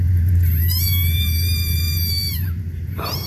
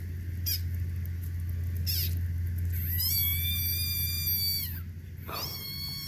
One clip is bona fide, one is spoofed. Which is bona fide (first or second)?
second